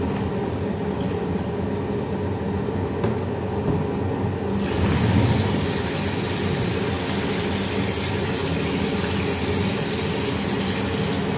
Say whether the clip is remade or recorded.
recorded